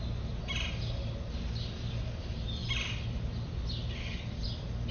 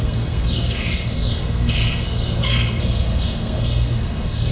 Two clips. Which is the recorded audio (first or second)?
first